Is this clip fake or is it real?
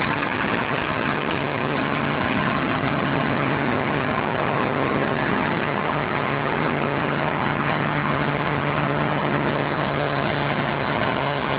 fake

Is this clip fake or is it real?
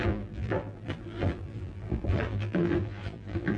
fake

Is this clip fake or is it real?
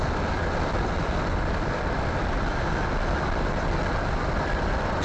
fake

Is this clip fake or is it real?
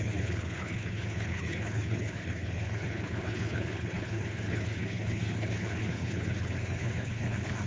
fake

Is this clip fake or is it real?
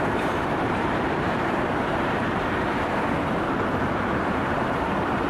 fake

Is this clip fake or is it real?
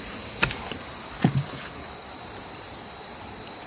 fake